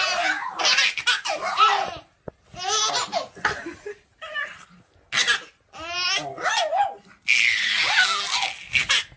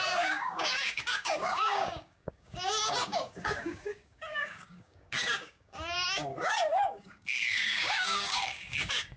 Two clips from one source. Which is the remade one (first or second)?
second